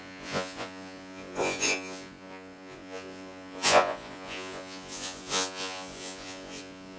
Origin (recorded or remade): remade